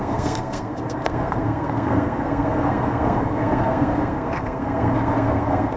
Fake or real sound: fake